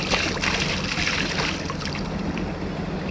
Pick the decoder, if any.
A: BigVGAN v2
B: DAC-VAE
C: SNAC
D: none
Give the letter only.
D